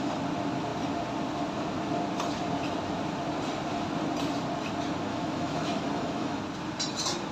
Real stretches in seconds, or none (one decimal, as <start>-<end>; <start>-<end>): 0.0-5.1; 6.4-7.3

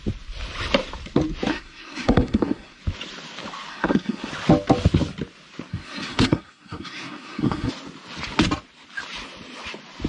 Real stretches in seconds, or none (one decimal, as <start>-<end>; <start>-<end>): 0.0-1.5; 2.8-3.7; 4.3-5.7; 7.7-10.1

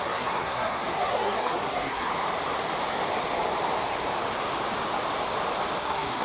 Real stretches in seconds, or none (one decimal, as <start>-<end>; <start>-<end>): 2.1-5.8

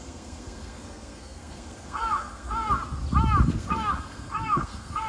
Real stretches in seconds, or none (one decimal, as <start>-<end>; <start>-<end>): 2.8-3.5

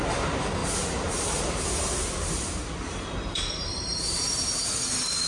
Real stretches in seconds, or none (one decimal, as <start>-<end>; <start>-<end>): 0.0-5.3